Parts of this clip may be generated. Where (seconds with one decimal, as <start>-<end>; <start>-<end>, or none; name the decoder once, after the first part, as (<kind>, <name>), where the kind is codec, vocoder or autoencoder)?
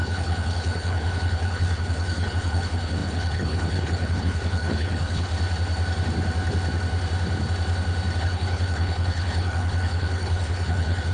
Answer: 0.0-5.3 (codec, HILCodec); 8.2-11.1